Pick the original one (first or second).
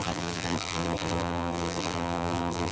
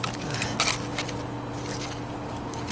second